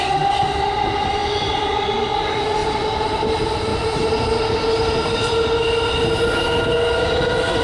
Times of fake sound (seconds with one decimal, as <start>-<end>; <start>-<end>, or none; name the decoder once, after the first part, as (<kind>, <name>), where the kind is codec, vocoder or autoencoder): 2.6-3.3 (vocoder, BigVGAN v2)